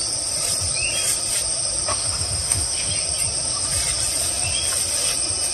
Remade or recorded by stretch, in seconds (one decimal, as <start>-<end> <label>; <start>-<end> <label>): 0.0-1.9 recorded; 1.9-2.9 remade; 2.9-5.5 recorded